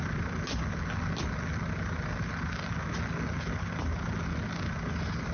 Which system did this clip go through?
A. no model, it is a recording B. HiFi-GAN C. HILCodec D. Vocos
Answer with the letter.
A